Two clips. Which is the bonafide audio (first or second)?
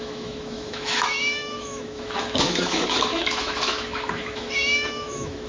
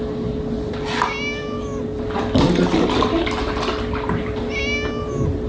second